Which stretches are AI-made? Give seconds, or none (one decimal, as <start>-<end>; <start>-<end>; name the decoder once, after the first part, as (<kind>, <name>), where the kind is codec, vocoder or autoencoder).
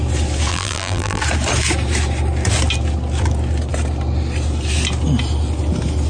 0.5-1.2 (vocoder, BigVGAN v2)